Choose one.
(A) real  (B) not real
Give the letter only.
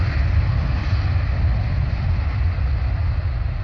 A